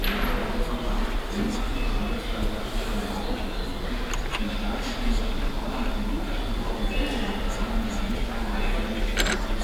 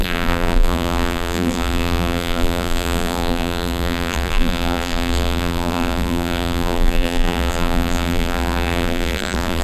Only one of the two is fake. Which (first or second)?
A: second